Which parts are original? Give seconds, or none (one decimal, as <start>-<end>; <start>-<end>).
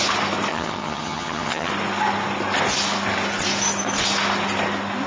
0.0-0.5; 1.7-5.1